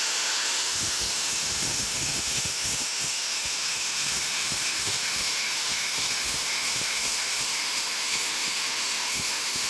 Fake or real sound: fake